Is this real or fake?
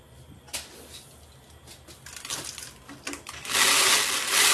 real